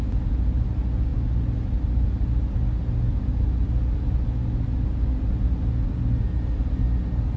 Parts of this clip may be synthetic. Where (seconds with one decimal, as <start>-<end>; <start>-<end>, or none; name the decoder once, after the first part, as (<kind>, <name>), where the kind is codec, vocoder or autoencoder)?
none